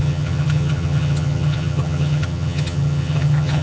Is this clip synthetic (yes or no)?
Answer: yes